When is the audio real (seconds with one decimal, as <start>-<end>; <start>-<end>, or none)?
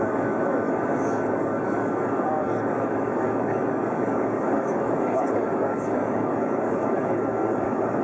none